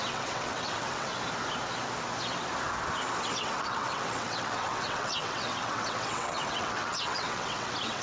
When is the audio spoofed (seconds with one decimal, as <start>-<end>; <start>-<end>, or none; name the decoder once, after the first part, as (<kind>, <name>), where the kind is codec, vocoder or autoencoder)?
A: 0.0-1.1 (vocoder, WaveNeXt); 3.2-8.0